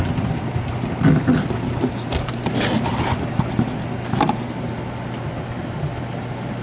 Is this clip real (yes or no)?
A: yes